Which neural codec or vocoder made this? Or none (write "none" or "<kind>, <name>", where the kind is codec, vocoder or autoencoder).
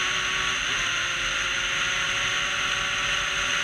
none